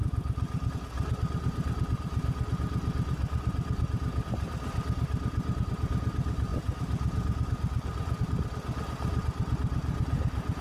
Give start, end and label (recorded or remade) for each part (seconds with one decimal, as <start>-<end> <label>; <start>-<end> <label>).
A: 0.0-10.6 recorded